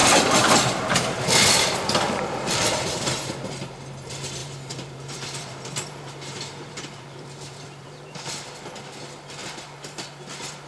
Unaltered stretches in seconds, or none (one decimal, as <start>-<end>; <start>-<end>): 3.3-4.4; 8.3-9.4